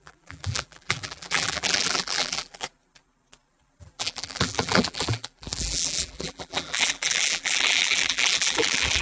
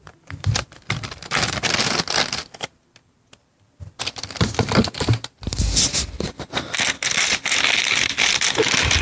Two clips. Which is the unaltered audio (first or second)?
second